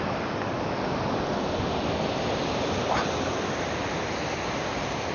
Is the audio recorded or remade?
recorded